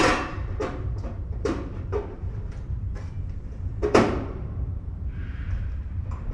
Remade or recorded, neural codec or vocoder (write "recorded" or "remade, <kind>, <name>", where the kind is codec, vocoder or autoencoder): remade, vocoder, BigVGAN v2